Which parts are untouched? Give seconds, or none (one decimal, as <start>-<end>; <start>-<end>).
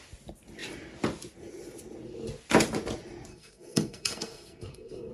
0.0-3.3